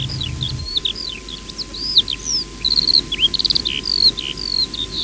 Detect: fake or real real